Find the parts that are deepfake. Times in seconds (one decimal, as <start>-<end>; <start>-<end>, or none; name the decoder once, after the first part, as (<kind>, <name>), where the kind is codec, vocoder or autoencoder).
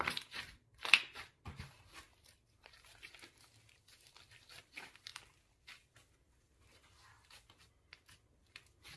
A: none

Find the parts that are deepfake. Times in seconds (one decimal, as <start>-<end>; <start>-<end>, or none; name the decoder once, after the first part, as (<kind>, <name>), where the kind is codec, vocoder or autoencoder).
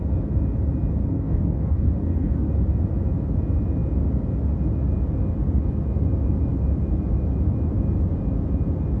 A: 1.0-2.5 (codec, DAC)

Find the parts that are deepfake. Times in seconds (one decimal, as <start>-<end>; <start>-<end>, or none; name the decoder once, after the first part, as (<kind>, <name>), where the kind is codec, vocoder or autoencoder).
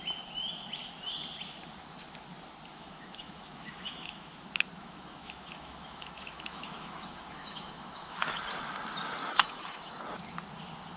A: 2.7-4.3 (autoencoder, DAC-VAE); 4.8-8.4; 9.2-10.0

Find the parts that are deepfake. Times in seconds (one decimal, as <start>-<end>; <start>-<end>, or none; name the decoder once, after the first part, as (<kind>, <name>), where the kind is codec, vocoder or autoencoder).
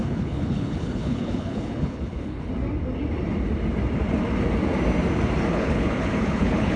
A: 0.0-2.5 (codec, HILCodec); 5.5-6.8